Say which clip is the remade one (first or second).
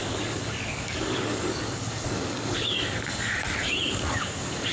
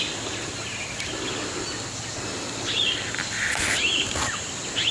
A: first